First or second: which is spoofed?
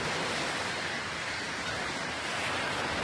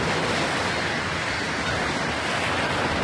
first